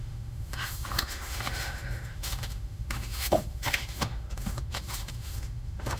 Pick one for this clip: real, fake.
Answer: fake